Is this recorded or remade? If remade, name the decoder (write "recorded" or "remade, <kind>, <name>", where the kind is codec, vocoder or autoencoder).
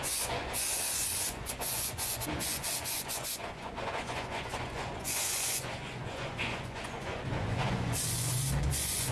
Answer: remade, vocoder, Vocos